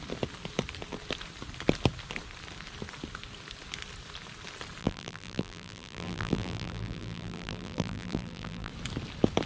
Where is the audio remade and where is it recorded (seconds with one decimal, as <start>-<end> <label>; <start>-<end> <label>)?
0.0-4.8 recorded; 4.8-8.7 remade; 8.7-9.5 recorded